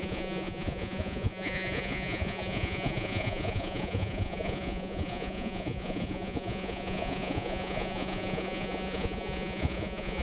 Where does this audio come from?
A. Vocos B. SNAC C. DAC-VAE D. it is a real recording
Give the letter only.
A